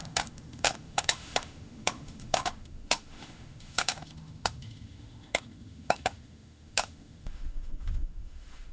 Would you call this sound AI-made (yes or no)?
yes